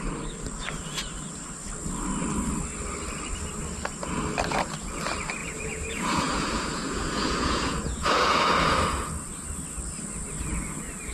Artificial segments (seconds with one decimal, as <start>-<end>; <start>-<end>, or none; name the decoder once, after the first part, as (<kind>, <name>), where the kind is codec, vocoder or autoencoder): 5.4-9.1 (vocoder, Vocos)